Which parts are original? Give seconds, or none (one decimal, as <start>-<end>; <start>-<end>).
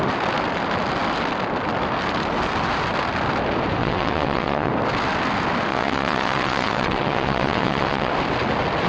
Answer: 0.0-3.8; 4.7-5.7; 8.1-8.9